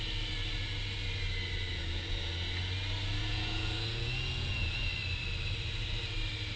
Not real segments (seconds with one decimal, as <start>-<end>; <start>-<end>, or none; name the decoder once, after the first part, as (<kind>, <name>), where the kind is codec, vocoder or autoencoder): 1.7-2.3 (vocoder, Vocos); 3.2-4.9